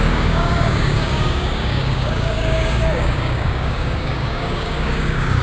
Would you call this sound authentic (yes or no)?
no